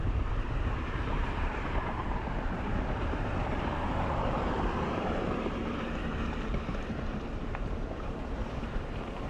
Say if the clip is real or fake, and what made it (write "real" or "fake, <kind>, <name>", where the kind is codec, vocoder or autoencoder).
fake, vocoder, BigVGAN v2